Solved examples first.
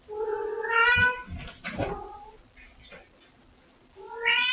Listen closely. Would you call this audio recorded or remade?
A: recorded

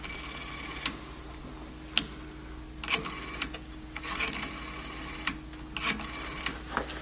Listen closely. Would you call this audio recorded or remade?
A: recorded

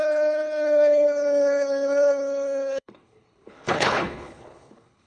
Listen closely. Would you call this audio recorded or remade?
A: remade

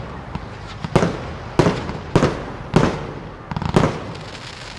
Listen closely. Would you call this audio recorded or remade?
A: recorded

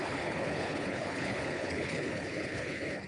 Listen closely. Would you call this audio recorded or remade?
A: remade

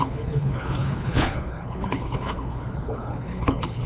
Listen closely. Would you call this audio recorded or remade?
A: remade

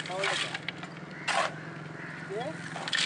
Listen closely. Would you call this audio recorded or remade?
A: recorded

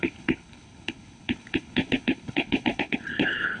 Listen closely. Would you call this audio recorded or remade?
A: remade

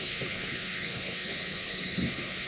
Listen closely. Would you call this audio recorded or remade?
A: remade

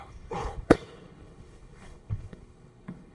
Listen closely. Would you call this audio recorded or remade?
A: remade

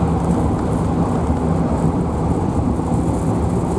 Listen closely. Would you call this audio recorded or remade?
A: recorded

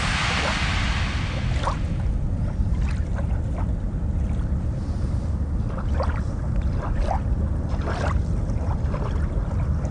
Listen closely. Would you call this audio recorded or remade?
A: recorded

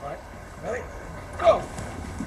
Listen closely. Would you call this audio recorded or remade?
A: remade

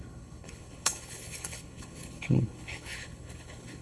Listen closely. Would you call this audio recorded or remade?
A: remade